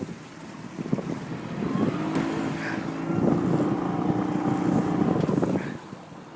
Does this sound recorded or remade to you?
recorded